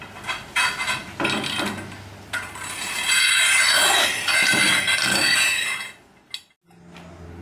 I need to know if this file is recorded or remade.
recorded